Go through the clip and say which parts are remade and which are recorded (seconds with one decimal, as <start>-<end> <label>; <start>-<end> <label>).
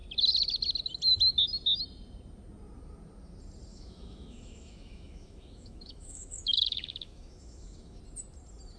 0.0-3.7 recorded; 3.7-8.0 remade; 8.0-8.8 recorded